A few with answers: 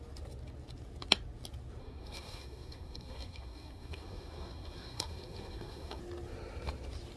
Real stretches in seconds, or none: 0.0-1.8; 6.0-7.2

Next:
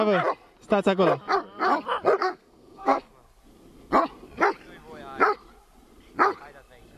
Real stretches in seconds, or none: 0.0-2.2; 3.1-7.0

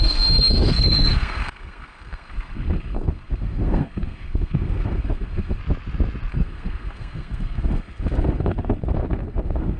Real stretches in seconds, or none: 5.6-6.3

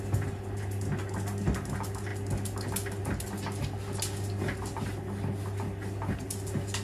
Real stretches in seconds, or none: 0.0-6.8

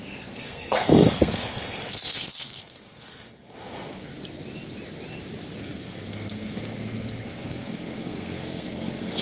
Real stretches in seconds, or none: 4.1-5.6

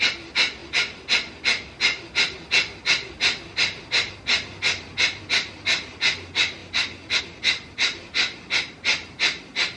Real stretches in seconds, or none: 0.0-9.8